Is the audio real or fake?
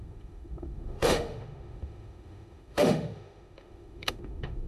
fake